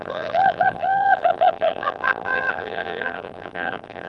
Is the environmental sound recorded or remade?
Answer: remade